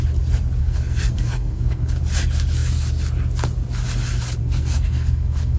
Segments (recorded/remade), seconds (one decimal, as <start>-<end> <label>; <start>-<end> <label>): 0.0-0.6 recorded; 0.6-2.0 remade; 2.0-4.4 recorded; 4.4-5.6 remade